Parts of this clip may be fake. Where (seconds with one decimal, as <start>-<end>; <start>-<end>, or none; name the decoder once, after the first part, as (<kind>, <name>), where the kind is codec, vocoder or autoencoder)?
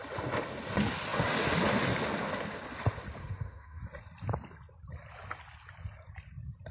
3.2-3.8 (autoencoder, DAC-VAE)